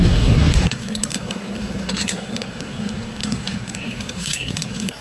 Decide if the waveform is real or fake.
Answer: fake